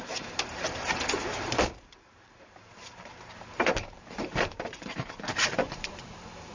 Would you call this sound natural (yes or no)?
no